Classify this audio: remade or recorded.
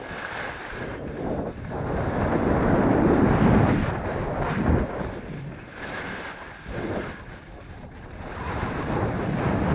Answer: recorded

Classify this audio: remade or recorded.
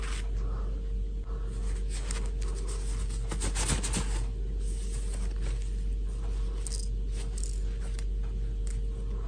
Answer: recorded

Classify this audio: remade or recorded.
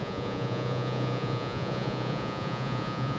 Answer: remade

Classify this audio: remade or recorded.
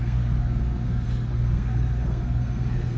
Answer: remade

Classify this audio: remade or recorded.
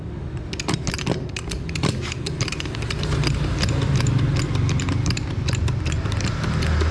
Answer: recorded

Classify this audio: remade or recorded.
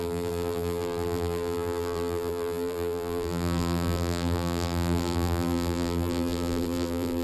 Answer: remade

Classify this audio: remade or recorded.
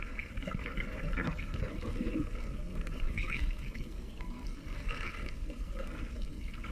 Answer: remade